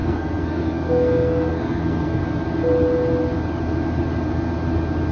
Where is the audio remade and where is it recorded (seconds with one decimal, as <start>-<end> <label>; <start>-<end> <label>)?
0.0-2.2 remade; 2.2-5.1 recorded